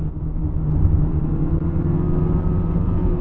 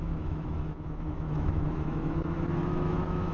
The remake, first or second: second